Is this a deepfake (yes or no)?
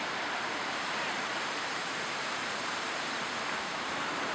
yes